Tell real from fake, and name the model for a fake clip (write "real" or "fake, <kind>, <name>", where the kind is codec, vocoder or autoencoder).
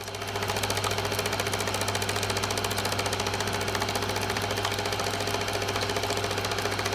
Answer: real